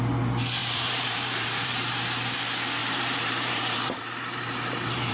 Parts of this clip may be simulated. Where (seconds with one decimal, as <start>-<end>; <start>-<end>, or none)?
0.6-1.9; 2.8-5.1